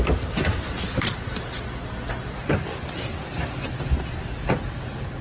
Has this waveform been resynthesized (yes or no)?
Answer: no